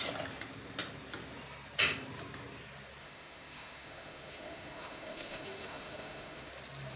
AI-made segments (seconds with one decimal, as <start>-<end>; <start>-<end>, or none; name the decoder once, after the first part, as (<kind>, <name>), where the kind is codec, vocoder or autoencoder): 3.0-6.5 (autoencoder, DAC-VAE)